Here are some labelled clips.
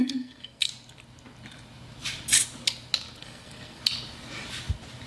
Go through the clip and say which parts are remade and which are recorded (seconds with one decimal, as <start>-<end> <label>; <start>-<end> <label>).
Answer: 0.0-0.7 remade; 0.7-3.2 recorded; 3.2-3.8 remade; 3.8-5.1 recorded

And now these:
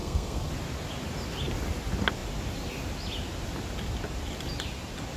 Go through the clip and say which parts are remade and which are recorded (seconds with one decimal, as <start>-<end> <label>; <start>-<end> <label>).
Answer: 0.0-0.5 remade; 0.5-5.2 recorded

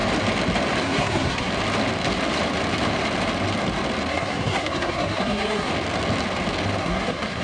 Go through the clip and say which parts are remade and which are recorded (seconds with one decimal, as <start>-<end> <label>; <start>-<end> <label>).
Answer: 0.0-0.8 recorded; 0.8-1.5 remade; 1.5-4.1 recorded; 4.1-5.7 remade; 5.7-6.8 recorded; 6.8-7.4 remade